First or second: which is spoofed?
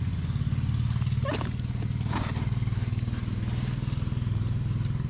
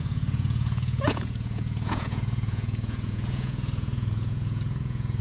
second